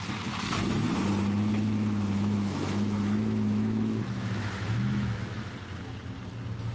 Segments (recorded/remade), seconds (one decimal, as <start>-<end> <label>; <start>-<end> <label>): 0.0-1.5 recorded; 1.5-5.5 remade; 5.5-6.7 recorded